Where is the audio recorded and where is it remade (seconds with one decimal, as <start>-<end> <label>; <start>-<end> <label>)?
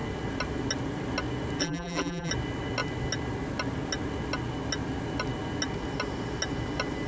0.0-1.6 recorded; 1.6-2.3 remade; 2.3-7.1 recorded